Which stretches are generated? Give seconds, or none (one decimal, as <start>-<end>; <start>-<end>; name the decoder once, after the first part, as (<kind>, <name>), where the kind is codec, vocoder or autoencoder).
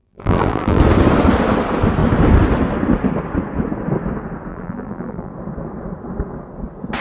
0.0-0.8 (vocoder, BigVGAN v2); 4.5-5.3